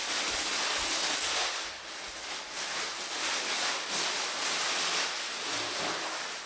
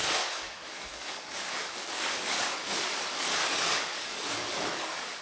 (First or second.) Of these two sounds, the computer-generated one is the second